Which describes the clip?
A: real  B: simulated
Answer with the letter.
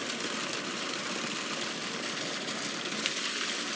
A